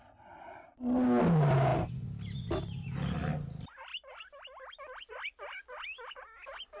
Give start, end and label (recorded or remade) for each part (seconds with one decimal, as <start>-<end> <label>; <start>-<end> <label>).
0.0-6.8 recorded